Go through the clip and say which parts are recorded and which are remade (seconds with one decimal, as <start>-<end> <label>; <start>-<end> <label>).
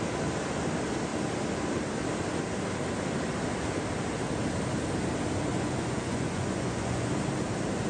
0.0-5.5 recorded; 5.5-7.1 remade; 7.1-7.9 recorded